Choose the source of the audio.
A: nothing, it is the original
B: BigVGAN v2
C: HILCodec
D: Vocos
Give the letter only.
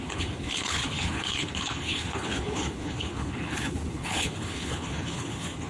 C